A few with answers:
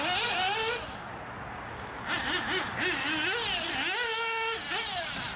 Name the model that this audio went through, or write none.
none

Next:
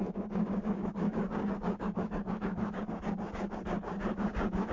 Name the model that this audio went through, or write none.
codec, DAC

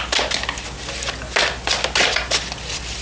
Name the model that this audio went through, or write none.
none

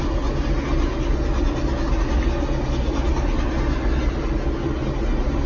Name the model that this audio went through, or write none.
none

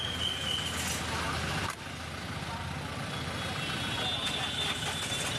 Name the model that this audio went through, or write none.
none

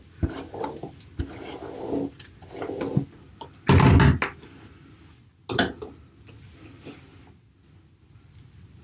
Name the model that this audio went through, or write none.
none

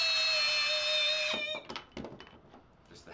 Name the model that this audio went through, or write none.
none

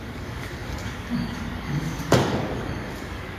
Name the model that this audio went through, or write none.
codec, DAC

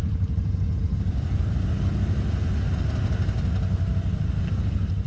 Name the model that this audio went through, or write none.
none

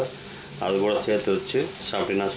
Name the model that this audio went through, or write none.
none